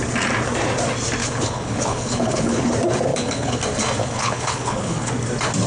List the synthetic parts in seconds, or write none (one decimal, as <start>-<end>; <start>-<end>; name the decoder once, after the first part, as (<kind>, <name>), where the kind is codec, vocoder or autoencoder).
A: 1.2-2.6 (codec, HILCodec); 3.1-3.6; 4.0-5.1